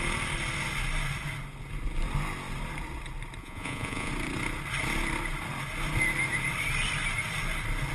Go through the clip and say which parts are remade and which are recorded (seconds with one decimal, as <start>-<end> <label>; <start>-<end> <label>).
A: 0.0-3.4 recorded; 3.4-4.1 remade; 4.1-7.9 recorded